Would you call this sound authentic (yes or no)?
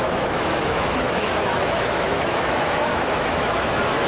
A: no